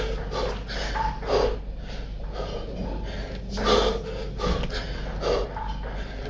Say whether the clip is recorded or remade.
recorded